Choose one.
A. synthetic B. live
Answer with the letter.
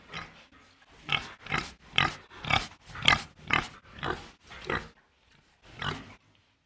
B